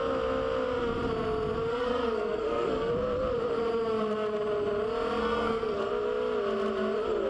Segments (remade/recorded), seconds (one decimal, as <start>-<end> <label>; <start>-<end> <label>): 0.0-1.7 recorded; 1.7-2.9 remade; 2.9-5.2 recorded; 5.2-5.9 remade; 5.9-7.3 recorded